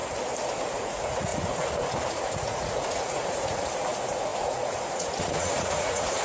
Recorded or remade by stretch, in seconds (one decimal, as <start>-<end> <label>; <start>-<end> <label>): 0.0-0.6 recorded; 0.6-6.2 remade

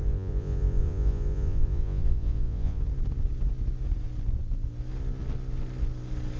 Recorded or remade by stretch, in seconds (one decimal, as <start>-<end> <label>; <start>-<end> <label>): 0.0-2.8 remade; 2.8-6.4 recorded

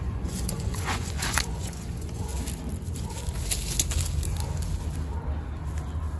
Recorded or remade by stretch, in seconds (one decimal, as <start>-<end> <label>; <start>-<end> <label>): 0.0-2.3 remade; 2.3-6.2 recorded

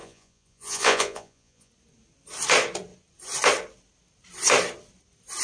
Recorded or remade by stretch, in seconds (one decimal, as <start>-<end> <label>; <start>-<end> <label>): 0.0-1.7 remade; 1.7-5.4 recorded

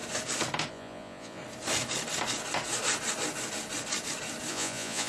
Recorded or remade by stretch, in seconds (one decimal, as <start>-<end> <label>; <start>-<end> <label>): 0.0-0.7 recorded; 0.7-1.4 remade; 1.4-4.5 recorded; 4.5-5.1 remade

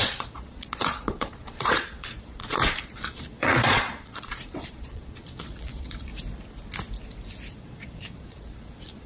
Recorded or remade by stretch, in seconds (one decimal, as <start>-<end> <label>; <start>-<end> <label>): 0.0-6.1 remade; 6.1-7.5 recorded; 7.5-9.1 remade

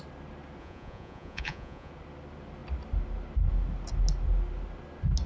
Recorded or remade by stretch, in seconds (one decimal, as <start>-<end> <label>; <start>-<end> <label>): 0.0-0.6 recorded; 0.6-1.9 remade; 1.9-5.3 recorded